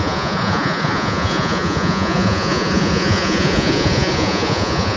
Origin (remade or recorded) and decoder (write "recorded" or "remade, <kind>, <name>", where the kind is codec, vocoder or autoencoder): remade, vocoder, Vocos